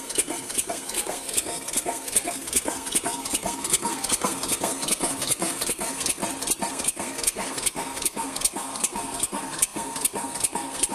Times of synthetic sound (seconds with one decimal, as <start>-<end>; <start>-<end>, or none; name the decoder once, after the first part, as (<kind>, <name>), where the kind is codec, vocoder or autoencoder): 0.0-6.2 (codec, SNAC); 6.7-10.9